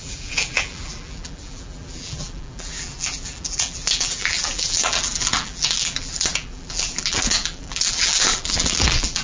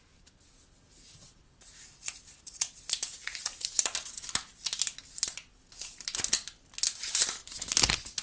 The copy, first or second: first